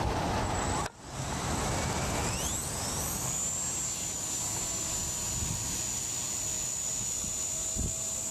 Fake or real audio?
real